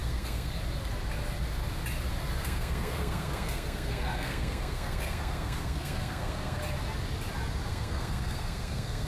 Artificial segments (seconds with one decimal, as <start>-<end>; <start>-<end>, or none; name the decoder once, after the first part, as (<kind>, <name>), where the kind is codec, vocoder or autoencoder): 0.0-0.5 (codec, SNAC); 2.4-6.6; 7.7-9.1